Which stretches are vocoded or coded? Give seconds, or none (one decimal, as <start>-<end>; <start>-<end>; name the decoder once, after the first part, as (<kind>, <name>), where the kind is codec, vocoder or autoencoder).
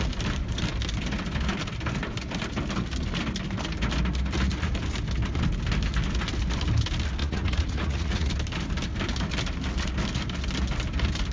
7.2-8.3 (vocoder, Vocos)